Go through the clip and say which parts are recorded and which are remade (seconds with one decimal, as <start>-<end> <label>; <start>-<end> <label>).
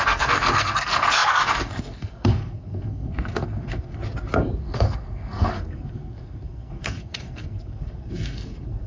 0.0-4.0 remade; 4.0-4.6 recorded; 4.6-8.9 remade